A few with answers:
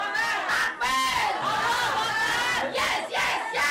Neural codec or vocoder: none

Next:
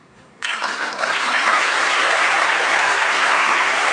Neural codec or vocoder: codec, SNAC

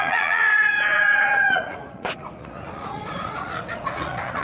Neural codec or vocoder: vocoder, Vocos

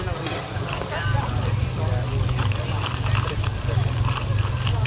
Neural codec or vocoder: none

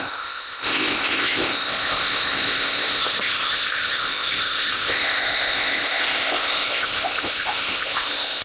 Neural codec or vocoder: codec, ZipCodec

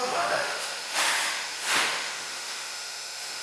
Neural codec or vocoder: autoencoder, DAC-VAE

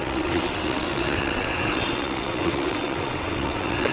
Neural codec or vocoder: vocoder, WaveNeXt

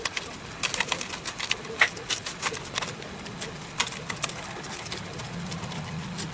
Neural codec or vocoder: none